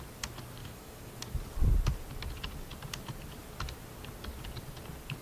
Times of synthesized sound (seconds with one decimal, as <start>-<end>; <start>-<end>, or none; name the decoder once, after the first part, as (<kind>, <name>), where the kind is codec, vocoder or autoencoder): 0.6-1.1 (autoencoder, DAC-VAE)